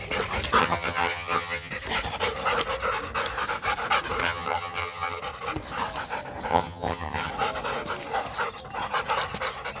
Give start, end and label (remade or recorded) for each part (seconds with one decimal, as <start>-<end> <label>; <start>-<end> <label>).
0.0-0.6 recorded; 0.6-1.7 remade; 1.7-4.2 recorded; 4.2-5.2 remade; 5.2-6.5 recorded; 6.5-7.3 remade; 7.3-9.8 recorded